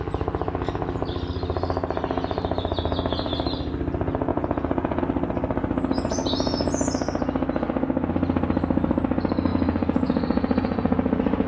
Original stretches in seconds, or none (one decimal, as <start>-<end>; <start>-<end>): 0.0-4.3; 5.0-9.5

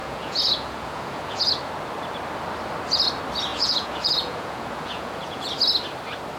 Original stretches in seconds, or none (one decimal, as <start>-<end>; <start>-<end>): 1.5-3.5; 5.5-6.4

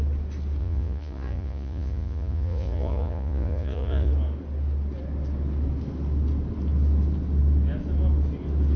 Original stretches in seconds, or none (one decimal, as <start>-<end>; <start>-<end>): 0.0-0.6; 4.1-8.8

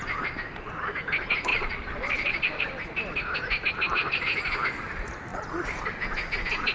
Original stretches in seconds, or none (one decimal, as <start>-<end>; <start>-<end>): 0.0-1.5; 2.7-5.3; 5.8-6.7

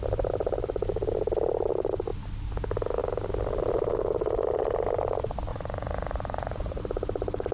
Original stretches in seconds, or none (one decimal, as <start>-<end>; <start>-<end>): 0.0-5.5; 6.8-7.5

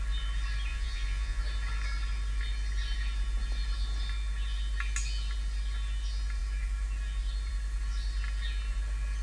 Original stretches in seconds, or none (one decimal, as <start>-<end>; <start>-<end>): 0.0-0.7; 1.4-9.2

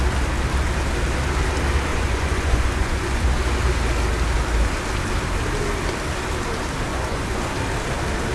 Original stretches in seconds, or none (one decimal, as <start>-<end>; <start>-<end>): 0.0-1.9; 3.3-6.9; 7.5-8.3